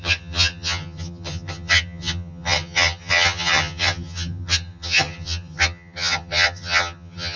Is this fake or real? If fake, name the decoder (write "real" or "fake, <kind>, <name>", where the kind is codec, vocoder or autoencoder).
fake, vocoder, HiFi-GAN